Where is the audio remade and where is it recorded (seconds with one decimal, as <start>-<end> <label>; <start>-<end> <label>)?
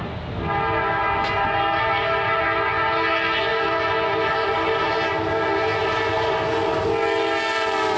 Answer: 0.0-8.0 recorded